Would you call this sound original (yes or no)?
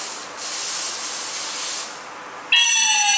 yes